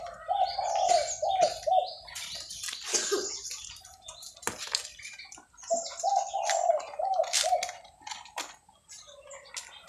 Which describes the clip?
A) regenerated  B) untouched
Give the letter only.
B